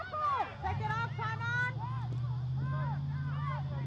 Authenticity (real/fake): real